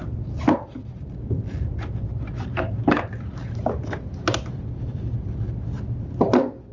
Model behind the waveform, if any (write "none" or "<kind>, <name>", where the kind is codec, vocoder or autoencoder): none